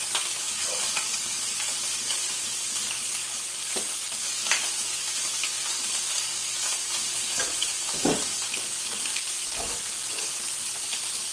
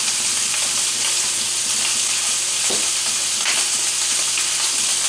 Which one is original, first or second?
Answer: second